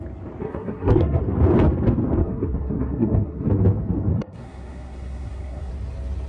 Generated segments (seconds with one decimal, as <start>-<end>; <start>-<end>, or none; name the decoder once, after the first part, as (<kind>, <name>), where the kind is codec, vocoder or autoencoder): 0.4-1.2 (codec, SNAC); 2.2-3.5; 4.1-5.7